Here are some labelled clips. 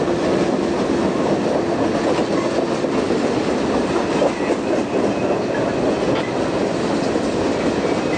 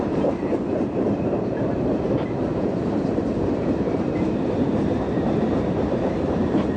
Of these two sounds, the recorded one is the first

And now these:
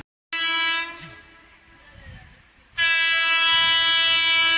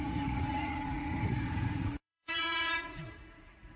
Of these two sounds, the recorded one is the first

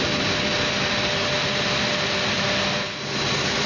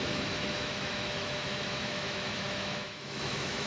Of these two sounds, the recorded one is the first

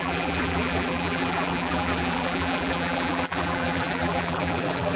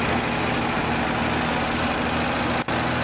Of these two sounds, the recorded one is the second